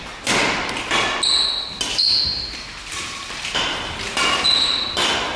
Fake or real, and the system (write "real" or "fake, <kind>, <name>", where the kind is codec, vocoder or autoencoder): real